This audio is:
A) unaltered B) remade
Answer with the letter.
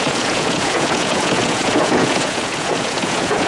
B